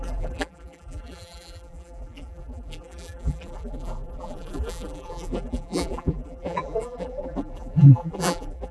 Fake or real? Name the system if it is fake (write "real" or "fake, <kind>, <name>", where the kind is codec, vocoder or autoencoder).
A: fake, vocoder, BigVGAN v2